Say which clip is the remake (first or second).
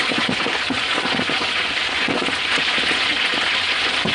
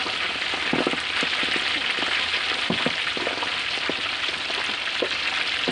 first